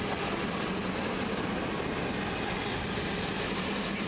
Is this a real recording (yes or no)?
yes